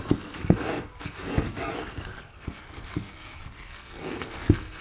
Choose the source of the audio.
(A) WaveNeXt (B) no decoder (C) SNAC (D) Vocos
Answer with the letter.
C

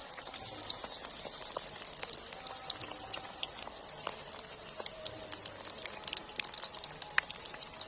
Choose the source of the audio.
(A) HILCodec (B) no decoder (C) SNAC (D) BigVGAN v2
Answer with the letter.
B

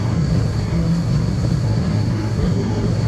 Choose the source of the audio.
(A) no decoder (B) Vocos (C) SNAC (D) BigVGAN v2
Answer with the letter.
C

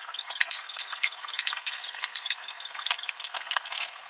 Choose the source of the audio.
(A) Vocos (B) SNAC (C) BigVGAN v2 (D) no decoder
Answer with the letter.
B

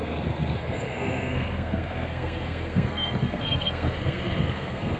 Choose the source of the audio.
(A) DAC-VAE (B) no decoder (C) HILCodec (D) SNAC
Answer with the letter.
D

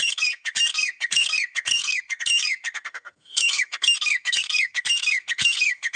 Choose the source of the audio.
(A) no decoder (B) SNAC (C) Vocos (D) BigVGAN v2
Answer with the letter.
B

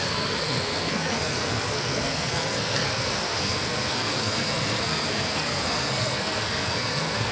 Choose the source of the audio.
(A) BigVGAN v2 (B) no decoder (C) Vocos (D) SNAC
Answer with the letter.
D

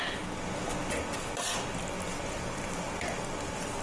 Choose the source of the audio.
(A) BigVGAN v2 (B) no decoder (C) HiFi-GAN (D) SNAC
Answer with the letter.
B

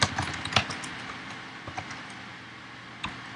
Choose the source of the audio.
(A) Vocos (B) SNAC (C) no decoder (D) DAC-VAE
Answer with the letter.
C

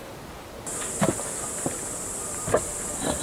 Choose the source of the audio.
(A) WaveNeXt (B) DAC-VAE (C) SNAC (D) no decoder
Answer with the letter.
D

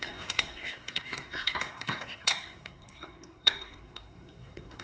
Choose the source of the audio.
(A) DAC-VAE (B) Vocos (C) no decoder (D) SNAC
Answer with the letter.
D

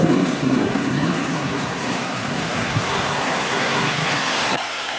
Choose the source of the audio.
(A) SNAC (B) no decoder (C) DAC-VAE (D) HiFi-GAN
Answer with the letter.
A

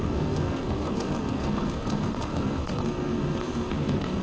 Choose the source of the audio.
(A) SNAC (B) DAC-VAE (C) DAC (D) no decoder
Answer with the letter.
A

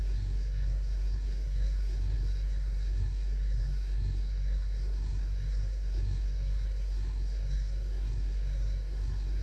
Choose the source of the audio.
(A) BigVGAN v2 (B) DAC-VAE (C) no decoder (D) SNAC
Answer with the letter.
D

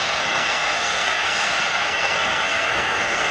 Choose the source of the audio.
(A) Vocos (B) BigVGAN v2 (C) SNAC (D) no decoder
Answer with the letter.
C